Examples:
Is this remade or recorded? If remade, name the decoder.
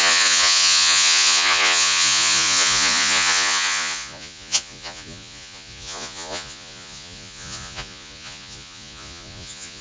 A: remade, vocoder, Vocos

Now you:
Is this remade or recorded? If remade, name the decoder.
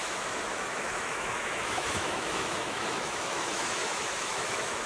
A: remade, autoencoder, DAC-VAE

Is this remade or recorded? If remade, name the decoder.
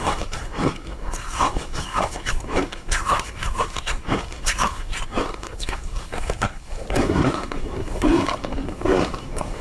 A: remade, codec, SNAC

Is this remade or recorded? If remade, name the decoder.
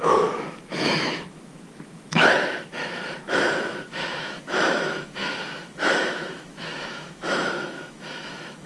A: remade, autoencoder, DAC-VAE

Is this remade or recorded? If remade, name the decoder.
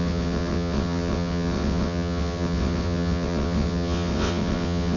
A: remade, vocoder, WaveNeXt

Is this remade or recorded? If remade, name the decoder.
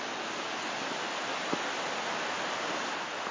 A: recorded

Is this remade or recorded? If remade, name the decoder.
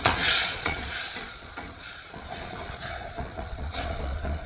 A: remade, vocoder, Vocos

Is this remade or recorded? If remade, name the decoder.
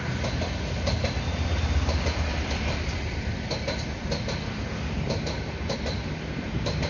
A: recorded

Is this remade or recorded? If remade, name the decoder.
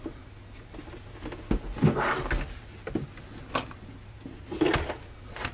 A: recorded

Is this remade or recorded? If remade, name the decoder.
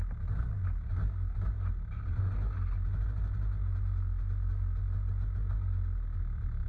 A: recorded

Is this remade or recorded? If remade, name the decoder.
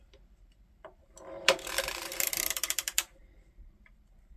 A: remade, vocoder, BigVGAN v2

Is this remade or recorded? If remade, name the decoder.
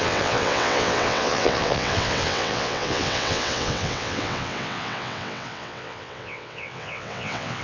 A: remade, vocoder, WaveNeXt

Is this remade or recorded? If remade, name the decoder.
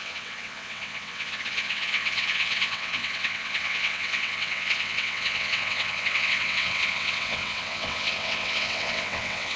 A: remade, vocoder, WaveNeXt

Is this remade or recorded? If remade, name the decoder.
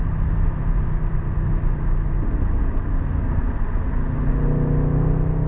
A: recorded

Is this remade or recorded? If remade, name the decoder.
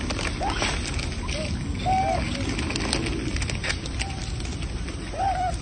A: recorded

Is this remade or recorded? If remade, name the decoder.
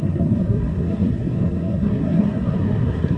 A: remade, codec, SNAC